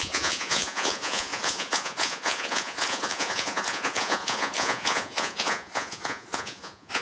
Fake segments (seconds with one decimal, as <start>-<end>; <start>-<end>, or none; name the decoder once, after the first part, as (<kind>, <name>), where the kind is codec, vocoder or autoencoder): 0.0-7.0 (vocoder, Vocos)

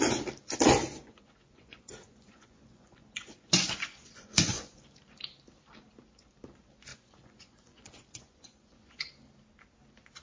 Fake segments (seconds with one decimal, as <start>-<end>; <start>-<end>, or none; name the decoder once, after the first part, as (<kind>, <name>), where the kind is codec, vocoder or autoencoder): 0.8-5.0 (vocoder, Vocos); 6.9-9.1

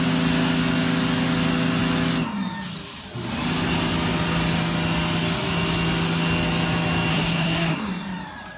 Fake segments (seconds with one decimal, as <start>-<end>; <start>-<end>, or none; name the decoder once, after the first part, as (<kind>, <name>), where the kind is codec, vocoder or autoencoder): 7.1-7.9 (codec, SNAC)